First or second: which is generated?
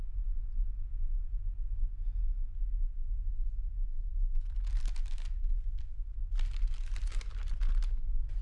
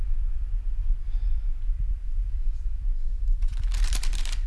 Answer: second